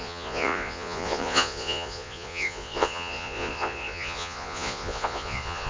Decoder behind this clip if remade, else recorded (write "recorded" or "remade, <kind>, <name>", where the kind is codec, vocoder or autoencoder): remade, vocoder, Vocos